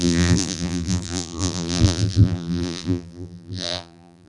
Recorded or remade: remade